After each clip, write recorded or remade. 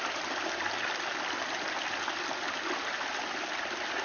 recorded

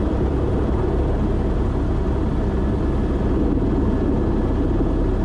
recorded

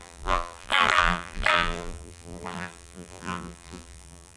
remade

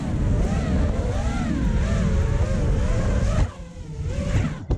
recorded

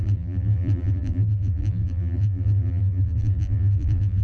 remade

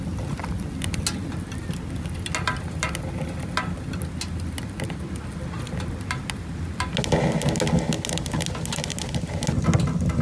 recorded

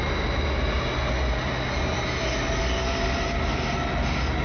recorded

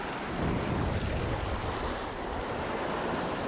recorded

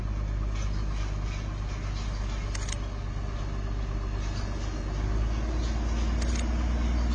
recorded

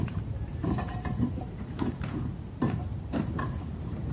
remade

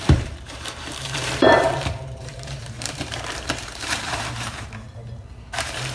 remade